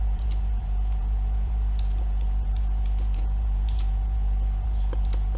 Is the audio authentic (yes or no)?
no